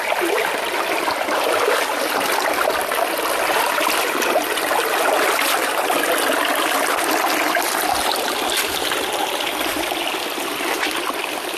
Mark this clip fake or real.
real